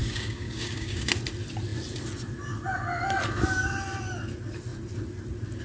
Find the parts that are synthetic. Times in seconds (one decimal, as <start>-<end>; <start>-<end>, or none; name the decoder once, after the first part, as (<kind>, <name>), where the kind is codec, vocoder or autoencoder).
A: 0.0-1.1 (codec, DAC)